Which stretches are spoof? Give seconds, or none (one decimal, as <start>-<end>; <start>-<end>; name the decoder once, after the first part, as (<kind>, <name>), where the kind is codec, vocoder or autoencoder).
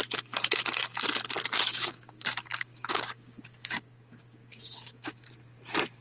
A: 1.7-5.3 (codec, DAC)